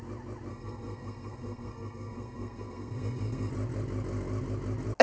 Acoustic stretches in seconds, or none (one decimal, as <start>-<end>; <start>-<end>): 0.0-0.5; 3.5-5.0